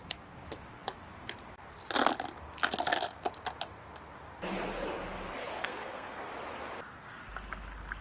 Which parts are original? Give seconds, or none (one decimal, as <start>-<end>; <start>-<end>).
0.0-5.6; 6.3-8.0